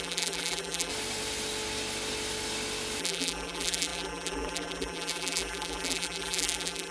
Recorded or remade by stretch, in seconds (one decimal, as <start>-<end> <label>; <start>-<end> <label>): 0.0-0.9 remade; 0.9-3.0 recorded; 3.0-6.9 remade